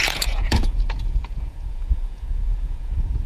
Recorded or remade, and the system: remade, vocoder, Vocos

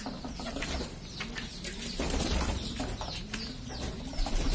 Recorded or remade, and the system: recorded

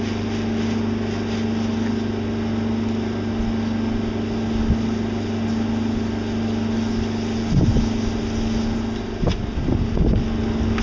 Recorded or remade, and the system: recorded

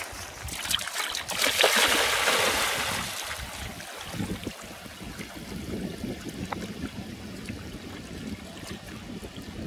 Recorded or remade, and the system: recorded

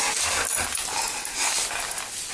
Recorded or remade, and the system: recorded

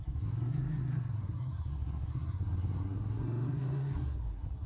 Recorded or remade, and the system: remade, codec, SNAC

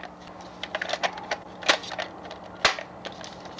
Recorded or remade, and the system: recorded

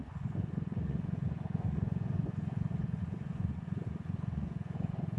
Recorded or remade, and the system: remade, vocoder, Vocos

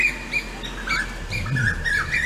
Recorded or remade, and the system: recorded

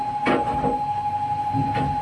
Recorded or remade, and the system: recorded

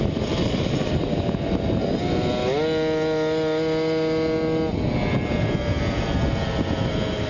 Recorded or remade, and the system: recorded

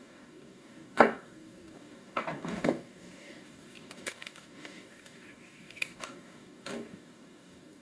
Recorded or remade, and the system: remade, codec, DAC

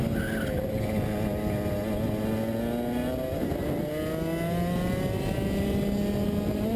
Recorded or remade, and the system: recorded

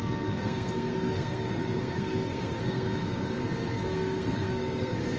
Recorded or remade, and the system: remade, codec, SNAC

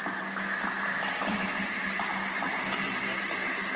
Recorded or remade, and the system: recorded